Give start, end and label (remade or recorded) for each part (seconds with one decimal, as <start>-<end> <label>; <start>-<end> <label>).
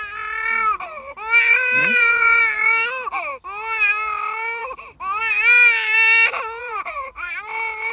0.0-1.8 recorded; 1.8-2.4 remade; 2.4-6.6 recorded; 6.6-7.3 remade; 7.3-7.9 recorded